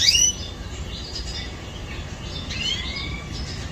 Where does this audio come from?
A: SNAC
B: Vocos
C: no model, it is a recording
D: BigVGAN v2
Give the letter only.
D